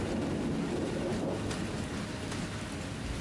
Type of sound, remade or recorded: recorded